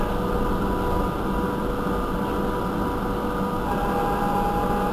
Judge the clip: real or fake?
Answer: real